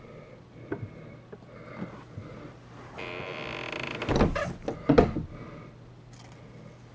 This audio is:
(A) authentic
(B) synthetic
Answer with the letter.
A